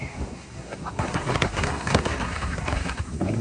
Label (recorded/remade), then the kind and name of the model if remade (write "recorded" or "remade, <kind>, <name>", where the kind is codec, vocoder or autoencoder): remade, codec, SNAC